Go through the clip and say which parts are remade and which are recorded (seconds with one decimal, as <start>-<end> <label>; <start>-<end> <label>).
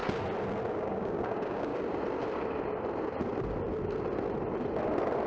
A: 0.0-0.7 recorded; 0.7-1.7 remade; 1.7-5.3 recorded